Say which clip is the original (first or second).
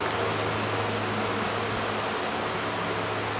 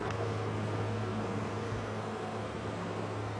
first